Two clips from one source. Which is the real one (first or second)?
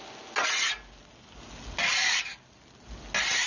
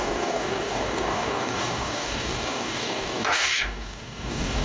first